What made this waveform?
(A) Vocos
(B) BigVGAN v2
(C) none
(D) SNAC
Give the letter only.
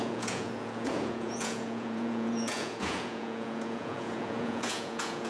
A